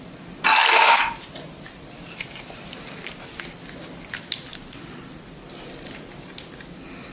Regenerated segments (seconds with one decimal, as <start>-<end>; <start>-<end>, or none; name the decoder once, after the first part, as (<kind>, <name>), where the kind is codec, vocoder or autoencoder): none